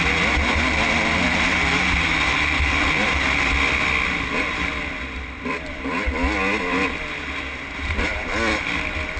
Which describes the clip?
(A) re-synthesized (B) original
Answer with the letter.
B